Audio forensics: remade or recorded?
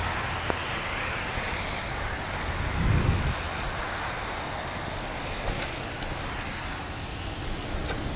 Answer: recorded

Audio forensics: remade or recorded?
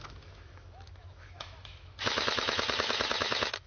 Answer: remade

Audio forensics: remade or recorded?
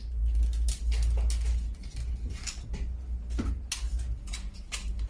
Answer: recorded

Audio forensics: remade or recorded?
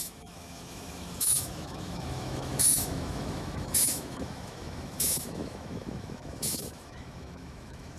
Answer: remade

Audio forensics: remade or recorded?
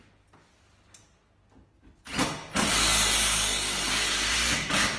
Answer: recorded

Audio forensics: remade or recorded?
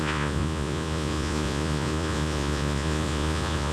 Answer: remade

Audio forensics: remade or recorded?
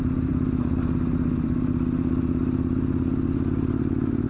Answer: remade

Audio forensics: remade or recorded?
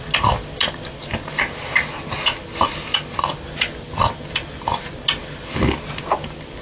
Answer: recorded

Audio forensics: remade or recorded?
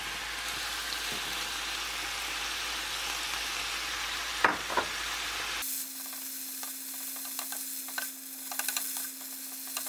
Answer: recorded